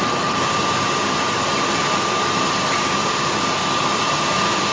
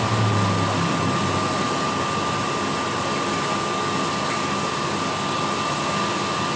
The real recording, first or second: second